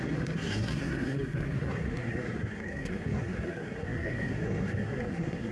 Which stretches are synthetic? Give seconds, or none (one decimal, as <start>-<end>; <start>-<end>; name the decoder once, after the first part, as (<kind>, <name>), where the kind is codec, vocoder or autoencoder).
0.0-5.5 (codec, SNAC)